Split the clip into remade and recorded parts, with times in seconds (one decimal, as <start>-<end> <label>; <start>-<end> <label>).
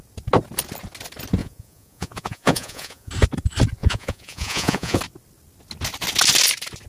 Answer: 0.0-1.4 recorded; 1.4-3.1 remade; 3.1-3.8 recorded; 3.8-5.0 remade; 5.0-6.9 recorded